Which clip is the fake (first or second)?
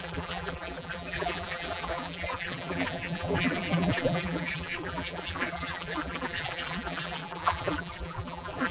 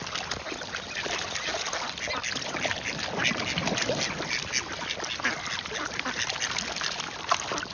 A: first